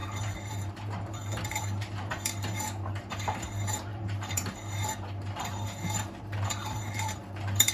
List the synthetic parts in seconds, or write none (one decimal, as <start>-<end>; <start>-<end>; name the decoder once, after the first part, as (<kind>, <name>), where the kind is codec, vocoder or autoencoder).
0.0-7.7 (vocoder, BigVGAN v2)